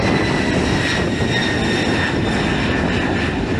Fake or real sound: real